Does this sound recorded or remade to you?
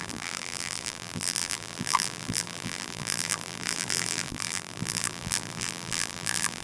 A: remade